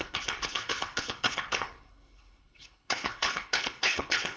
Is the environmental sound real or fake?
fake